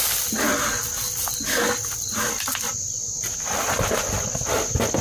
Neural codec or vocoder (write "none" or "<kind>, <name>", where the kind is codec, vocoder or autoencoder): none